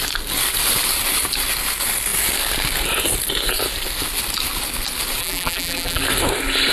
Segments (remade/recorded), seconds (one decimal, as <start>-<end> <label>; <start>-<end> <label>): 0.0-5.2 recorded; 5.2-6.0 remade; 6.0-6.7 recorded